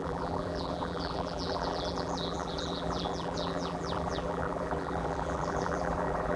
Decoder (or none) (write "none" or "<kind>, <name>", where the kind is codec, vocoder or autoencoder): vocoder, BigVGAN v2